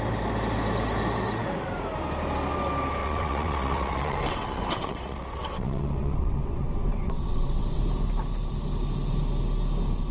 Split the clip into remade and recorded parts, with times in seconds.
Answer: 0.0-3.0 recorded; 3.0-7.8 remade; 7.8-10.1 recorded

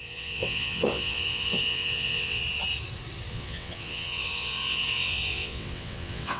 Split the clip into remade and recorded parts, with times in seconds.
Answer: 0.0-2.4 remade; 2.4-3.3 recorded; 3.3-6.4 remade

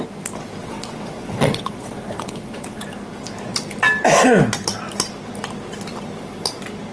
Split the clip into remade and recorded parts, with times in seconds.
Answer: 0.0-0.6 recorded; 0.6-2.8 remade; 2.8-6.9 recorded

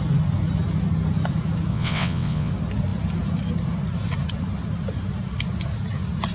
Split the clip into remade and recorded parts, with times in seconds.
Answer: 0.0-1.7 recorded; 1.7-2.5 remade; 2.5-6.3 recorded

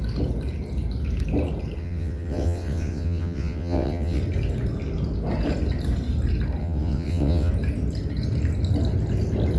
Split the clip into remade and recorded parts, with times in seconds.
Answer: 0.0-1.8 recorded; 1.8-4.2 remade; 4.2-6.6 recorded; 6.6-7.5 remade; 7.5-9.6 recorded

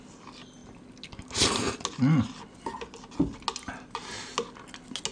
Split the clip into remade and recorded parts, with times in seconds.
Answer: 0.0-5.1 recorded

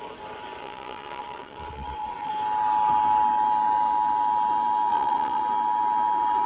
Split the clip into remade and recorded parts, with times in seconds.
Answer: 0.0-0.6 recorded; 0.6-2.3 remade; 2.3-4.9 recorded; 4.9-5.4 remade; 5.4-6.5 recorded

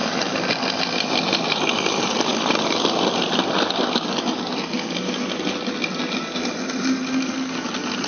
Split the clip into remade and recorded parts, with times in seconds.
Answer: 0.0-8.1 recorded